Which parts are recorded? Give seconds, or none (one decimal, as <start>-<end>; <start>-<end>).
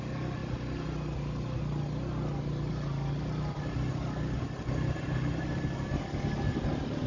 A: 0.0-7.1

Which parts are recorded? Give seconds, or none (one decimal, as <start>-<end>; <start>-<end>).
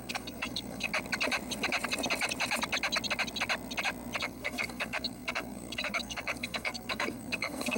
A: 0.9-4.2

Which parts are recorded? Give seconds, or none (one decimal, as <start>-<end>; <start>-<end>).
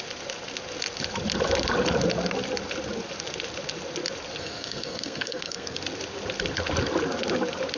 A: 0.0-4.4; 5.8-7.8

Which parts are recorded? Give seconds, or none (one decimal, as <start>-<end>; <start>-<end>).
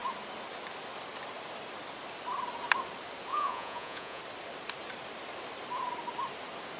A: 0.0-3.3; 4.2-6.8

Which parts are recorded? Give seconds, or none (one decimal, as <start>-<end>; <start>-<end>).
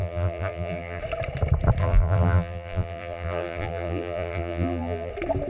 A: 1.0-1.8; 5.1-5.5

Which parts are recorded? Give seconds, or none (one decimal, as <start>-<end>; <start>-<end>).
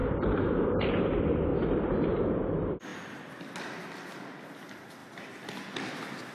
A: 0.9-1.5; 2.1-2.9; 3.8-5.0; 5.5-6.3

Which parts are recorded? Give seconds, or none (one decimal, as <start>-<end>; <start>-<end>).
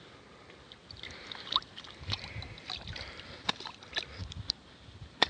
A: 0.0-0.8; 3.5-4.2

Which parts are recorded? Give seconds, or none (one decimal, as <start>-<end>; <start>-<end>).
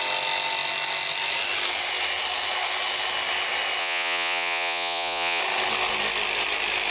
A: 0.0-3.8; 5.4-6.9